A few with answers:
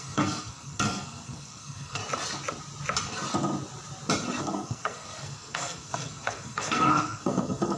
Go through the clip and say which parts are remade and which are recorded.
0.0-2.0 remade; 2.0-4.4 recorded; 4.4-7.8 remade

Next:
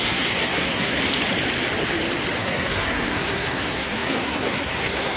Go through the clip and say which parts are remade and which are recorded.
0.0-1.0 remade; 1.0-2.4 recorded; 2.4-5.2 remade

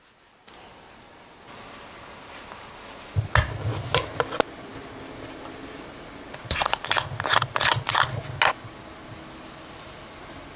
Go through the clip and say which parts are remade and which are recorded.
0.0-10.6 recorded

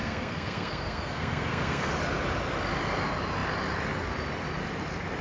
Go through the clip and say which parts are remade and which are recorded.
0.0-1.9 remade; 1.9-5.2 recorded

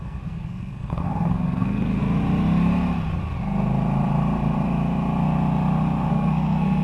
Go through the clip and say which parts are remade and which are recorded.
0.0-2.0 remade; 2.0-6.1 recorded; 6.1-6.8 remade